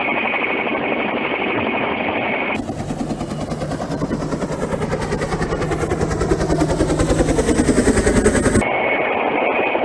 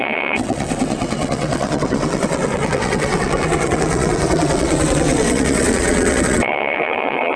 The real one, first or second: first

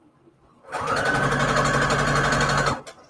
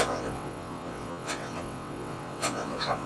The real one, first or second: first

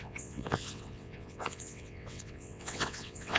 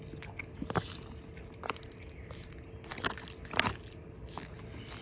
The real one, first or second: second